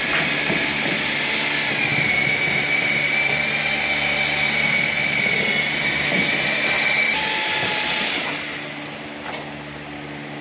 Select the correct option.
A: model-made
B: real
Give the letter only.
B